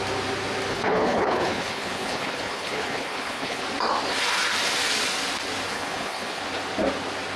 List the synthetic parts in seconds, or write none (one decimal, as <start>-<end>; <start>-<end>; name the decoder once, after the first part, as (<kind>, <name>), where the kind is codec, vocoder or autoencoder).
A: 0.7-3.6 (codec, HILCodec); 5.7-6.4